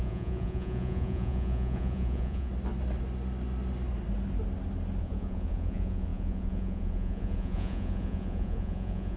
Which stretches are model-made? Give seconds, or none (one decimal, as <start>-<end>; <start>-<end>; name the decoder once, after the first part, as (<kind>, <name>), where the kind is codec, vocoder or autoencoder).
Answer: 0.0-2.5 (vocoder, Vocos); 5.0-9.2